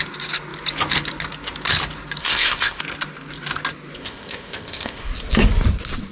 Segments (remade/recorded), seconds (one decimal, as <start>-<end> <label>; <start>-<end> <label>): 0.0-2.2 recorded; 2.2-2.8 remade; 2.8-4.0 recorded; 4.0-5.1 remade; 5.1-6.1 recorded